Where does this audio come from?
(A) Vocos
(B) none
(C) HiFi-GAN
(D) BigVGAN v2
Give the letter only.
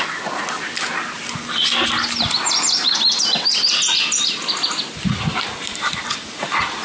B